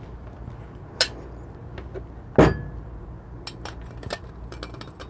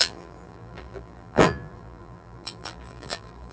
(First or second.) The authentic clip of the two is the first